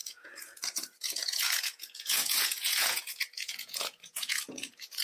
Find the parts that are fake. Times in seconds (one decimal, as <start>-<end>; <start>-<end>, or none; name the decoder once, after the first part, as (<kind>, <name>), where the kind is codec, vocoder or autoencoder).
0.0-5.0 (vocoder, Vocos)